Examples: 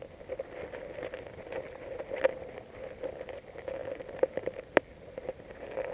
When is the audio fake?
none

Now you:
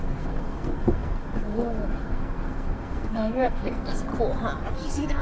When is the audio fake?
0.0-4.1 (codec, SNAC); 4.7-5.2

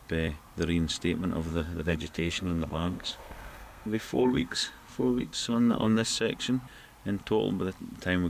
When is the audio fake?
1.5-6.1 (codec, SNAC)

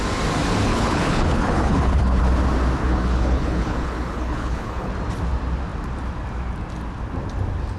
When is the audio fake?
0.7-2.2 (codec, HILCodec); 2.8-4.9

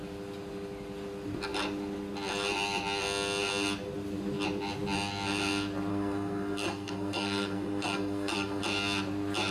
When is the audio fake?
5.9-8.6 (codec, SNAC)

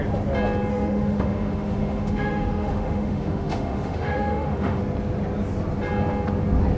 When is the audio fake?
0.7-4.8 (autoencoder, DAC-VAE)